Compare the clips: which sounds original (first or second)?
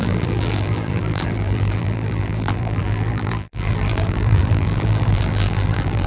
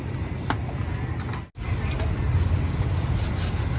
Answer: second